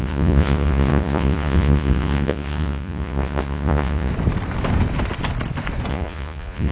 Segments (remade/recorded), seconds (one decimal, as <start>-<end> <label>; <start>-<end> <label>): 0.0-4.1 remade; 4.1-5.9 recorded; 5.9-6.7 remade